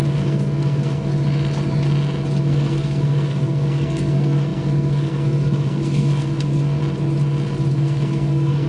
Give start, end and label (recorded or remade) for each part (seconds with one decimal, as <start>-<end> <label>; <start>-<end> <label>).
0.0-1.1 remade; 1.1-2.4 recorded; 2.4-6.8 remade; 6.8-7.7 recorded; 7.7-8.7 remade